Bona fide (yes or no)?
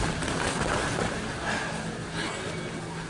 yes